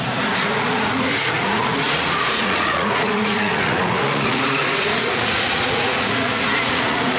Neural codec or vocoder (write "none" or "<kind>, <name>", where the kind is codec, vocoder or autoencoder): vocoder, Vocos